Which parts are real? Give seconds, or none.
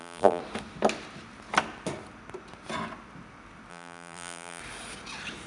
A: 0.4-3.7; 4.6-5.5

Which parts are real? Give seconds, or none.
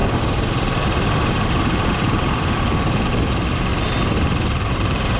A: 3.1-3.7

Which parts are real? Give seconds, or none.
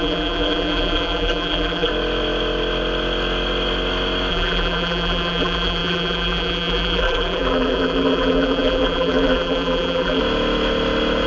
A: 1.9-4.3; 10.2-11.3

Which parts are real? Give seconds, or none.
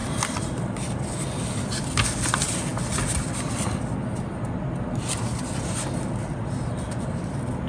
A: 1.1-7.7